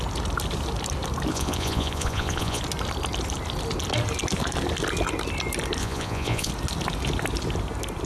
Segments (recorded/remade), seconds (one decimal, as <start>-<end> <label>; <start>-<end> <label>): 0.0-1.3 recorded; 1.3-2.6 remade; 2.6-5.8 recorded; 5.8-6.5 remade; 6.5-8.1 recorded

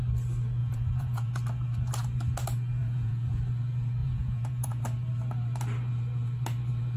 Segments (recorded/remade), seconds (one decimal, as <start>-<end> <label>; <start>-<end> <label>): 0.0-0.6 recorded; 0.6-1.3 remade; 1.3-2.8 recorded; 2.8-3.4 remade; 3.4-4.0 recorded; 4.0-4.8 remade; 4.8-7.0 recorded

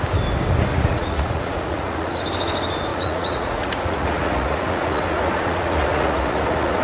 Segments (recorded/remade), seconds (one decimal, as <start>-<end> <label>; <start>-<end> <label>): 0.0-0.7 recorded; 0.7-2.2 remade; 2.2-2.9 recorded; 2.9-6.8 remade

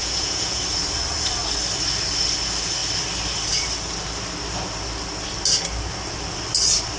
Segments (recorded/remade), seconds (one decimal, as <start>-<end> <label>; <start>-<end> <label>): 0.0-0.6 remade; 0.6-7.0 recorded

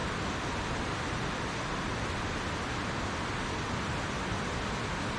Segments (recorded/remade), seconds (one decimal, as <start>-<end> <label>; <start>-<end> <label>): 0.0-5.2 recorded